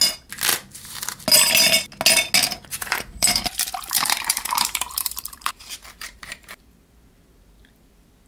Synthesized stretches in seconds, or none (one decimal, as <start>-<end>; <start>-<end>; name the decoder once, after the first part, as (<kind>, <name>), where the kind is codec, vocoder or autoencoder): 0.5-1.2 (vocoder, BigVGAN v2); 2.7-6.6

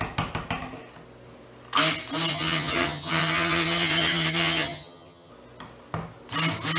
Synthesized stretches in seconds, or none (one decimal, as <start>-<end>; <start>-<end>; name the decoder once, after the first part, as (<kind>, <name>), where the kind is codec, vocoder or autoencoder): 2.3-5.3 (vocoder, HiFi-GAN)